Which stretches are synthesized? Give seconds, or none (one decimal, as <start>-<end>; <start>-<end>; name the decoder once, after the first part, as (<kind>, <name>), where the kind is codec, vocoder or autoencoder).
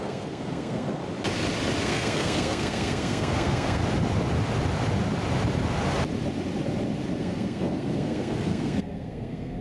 0.0-1.0 (codec, SNAC); 1.8-3.8; 7.2-9.6